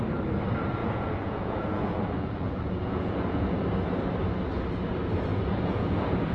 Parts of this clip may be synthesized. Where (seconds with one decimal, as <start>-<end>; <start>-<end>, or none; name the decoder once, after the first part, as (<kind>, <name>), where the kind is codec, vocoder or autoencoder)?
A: 0.8-3.6 (vocoder, Vocos); 5.3-6.3